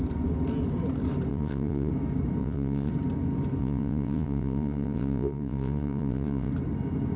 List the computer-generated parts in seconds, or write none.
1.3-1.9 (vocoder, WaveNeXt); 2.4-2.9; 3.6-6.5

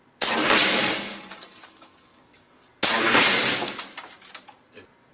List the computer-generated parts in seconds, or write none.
0.8-2.7 (codec, DAC)